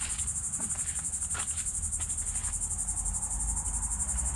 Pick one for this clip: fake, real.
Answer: real